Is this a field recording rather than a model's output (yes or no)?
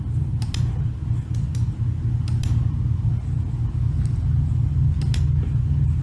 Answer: yes